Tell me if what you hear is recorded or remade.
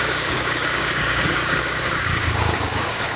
remade